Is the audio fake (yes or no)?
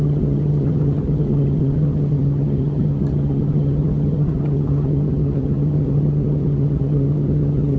yes